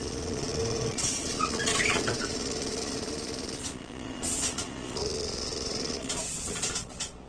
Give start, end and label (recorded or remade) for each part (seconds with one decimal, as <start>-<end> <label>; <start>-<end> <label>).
0.0-7.3 remade